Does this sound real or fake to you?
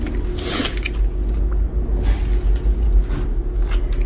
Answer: real